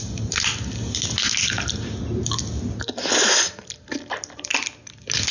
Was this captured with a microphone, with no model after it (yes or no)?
yes